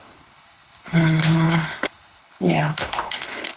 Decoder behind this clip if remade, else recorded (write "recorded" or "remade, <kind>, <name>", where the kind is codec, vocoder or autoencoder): remade, codec, HILCodec